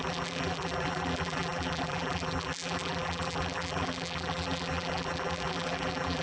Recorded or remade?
remade